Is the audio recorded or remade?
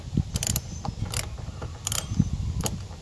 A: remade